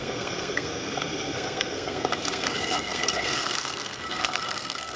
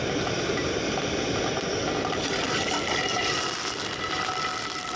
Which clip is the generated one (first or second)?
first